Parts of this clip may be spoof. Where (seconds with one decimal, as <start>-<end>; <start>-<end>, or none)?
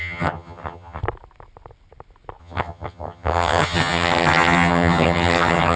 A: 0.0-1.0; 2.4-5.8